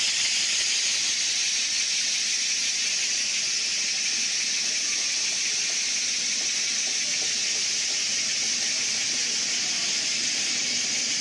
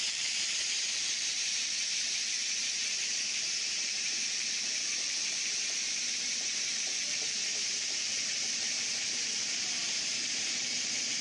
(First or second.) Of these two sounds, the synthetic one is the second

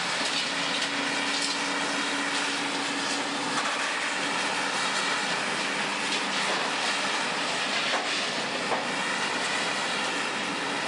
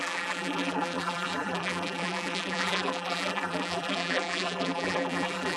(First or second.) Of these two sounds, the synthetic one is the second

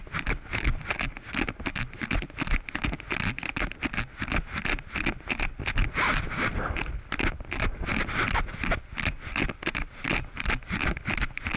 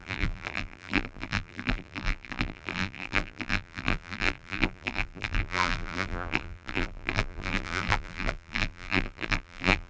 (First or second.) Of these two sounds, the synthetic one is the second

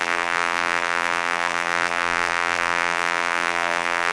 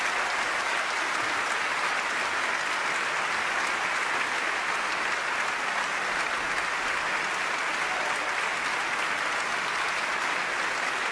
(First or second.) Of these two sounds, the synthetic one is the first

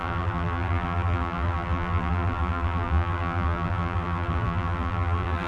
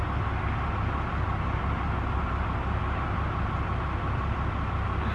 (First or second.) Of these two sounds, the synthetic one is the first